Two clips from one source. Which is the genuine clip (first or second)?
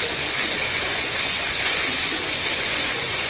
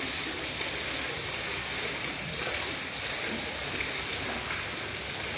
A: second